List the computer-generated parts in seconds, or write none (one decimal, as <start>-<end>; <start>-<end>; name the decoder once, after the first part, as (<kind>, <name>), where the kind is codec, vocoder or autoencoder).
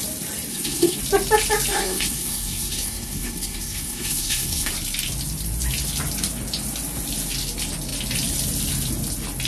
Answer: 0.5-1.0 (codec, SNAC); 1.7-4.7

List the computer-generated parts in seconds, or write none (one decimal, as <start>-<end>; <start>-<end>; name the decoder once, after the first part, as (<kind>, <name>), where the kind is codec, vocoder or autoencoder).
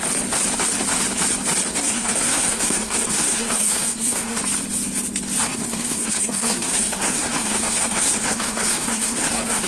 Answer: 1.7-4.4 (codec, SNAC); 5.4-9.7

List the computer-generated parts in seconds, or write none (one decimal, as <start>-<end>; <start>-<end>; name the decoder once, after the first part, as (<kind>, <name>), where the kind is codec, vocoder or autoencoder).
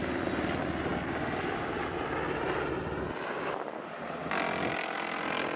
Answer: none